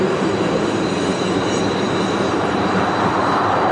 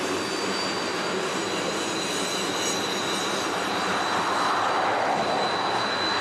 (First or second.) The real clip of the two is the second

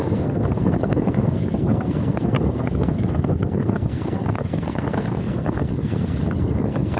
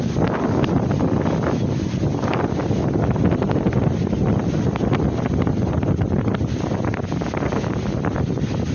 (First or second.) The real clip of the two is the second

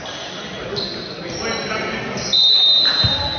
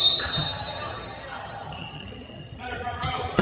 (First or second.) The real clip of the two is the first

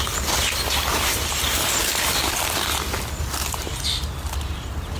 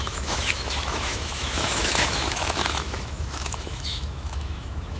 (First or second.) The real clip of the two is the first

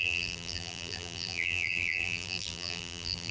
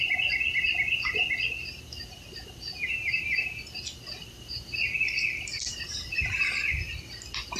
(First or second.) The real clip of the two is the second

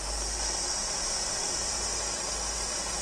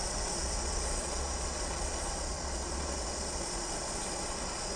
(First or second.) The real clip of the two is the first